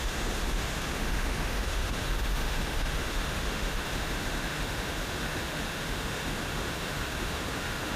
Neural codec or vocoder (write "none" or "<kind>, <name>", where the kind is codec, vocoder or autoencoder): autoencoder, DAC-VAE